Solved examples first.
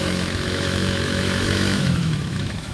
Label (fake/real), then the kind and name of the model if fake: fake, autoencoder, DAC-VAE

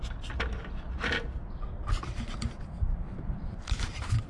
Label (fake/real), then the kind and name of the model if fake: real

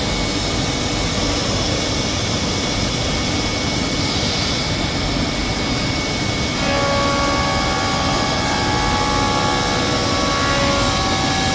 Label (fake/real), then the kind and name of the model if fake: real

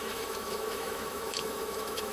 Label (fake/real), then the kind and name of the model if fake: fake, autoencoder, DAC-VAE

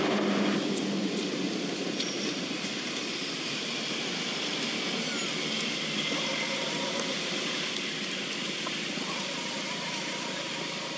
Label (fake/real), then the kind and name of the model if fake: real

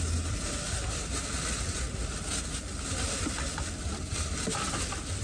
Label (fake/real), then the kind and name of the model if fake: real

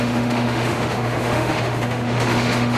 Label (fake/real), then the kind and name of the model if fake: fake, autoencoder, DAC-VAE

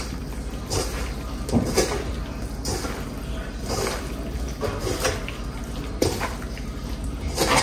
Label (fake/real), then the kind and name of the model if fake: real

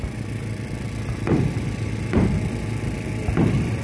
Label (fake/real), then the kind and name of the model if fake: real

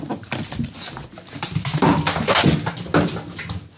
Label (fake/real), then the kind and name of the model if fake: real